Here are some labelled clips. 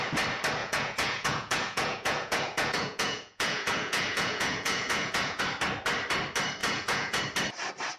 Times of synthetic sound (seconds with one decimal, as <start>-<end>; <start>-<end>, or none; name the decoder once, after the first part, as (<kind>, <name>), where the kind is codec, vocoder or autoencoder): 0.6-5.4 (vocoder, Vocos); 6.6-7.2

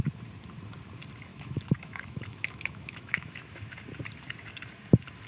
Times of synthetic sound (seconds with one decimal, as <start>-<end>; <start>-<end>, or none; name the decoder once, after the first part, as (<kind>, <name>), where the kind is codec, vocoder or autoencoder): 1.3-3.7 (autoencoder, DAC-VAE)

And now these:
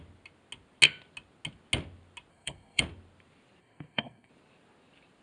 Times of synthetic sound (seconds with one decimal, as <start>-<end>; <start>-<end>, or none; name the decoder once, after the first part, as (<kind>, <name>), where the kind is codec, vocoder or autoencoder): 2.3-2.8 (codec, SNAC); 3.6-4.3

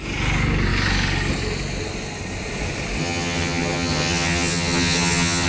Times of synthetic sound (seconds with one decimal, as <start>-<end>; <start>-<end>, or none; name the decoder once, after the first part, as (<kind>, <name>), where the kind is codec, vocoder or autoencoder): 3.0-5.5 (vocoder, HiFi-GAN)

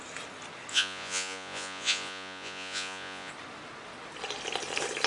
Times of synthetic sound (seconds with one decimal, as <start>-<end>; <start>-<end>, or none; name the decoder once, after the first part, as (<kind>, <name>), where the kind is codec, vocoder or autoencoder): 0.7-3.3 (vocoder, Vocos)

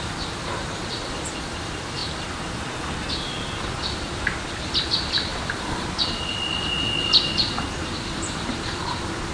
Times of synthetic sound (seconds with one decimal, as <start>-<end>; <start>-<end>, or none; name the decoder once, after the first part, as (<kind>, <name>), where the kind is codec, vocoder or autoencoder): 0.0-2.0 (vocoder, BigVGAN v2); 4.5-5.3; 6.0-9.3